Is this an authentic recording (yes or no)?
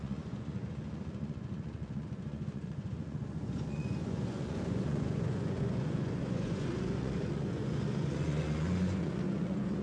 no